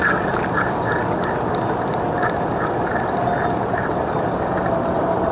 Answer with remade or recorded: recorded